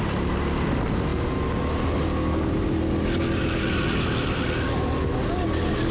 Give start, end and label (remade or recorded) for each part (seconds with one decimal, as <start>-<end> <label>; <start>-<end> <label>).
0.0-5.9 recorded